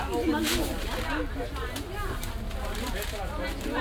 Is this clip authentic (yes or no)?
yes